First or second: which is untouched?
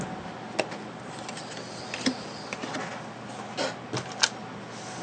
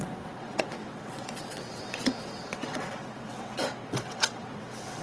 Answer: first